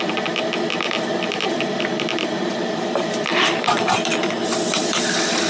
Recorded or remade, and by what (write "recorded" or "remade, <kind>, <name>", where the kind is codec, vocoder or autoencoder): remade, vocoder, BigVGAN v2